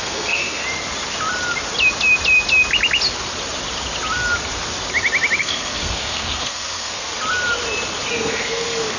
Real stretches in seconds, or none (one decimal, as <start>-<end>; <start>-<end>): 0.6-5.4; 7.1-8.1